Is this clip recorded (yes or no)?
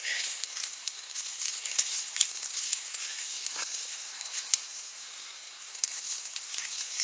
no